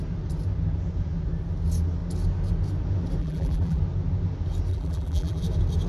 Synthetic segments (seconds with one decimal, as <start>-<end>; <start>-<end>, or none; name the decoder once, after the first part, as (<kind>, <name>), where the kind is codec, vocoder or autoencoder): 3.2-3.8 (vocoder, BigVGAN v2); 4.7-5.4